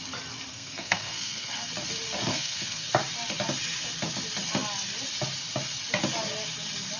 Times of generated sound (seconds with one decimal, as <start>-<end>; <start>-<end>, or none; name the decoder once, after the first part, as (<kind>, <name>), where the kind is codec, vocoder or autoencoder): 0.5-1.7 (codec, SNAC); 2.3-2.9